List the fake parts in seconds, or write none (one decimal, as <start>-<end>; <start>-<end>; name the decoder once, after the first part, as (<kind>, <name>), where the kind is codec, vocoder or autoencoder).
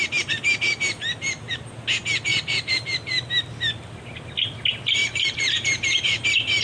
2.3-3.3 (vocoder, BigVGAN v2); 5.0-6.0